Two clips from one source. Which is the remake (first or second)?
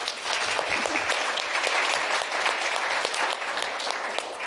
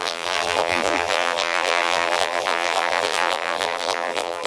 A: second